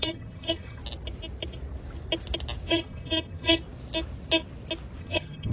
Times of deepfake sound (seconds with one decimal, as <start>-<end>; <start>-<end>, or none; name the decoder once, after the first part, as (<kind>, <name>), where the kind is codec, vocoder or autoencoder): 0.0-0.8 (vocoder, HiFi-GAN); 2.7-3.6; 5.0-5.5